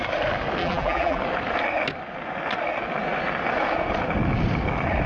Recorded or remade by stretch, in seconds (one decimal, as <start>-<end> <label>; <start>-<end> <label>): 0.0-0.6 recorded; 0.6-1.2 remade; 1.2-5.1 recorded